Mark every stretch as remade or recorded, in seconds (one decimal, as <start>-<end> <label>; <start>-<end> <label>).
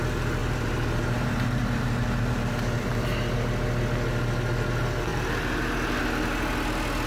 0.0-0.4 recorded; 0.4-3.2 remade; 3.2-7.1 recorded